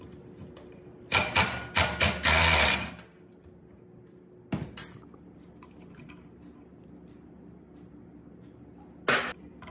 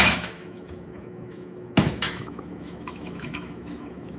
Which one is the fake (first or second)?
second